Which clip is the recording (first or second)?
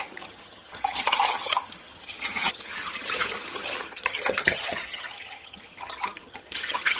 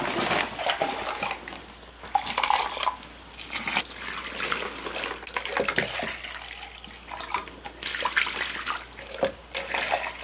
second